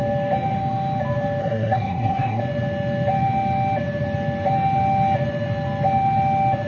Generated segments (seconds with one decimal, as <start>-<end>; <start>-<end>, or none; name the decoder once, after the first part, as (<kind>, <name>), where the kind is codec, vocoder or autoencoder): 1.4-2.4 (codec, SNAC)